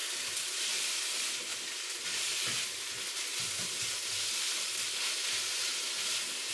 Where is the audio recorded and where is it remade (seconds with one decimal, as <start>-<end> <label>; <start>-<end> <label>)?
0.0-6.5 recorded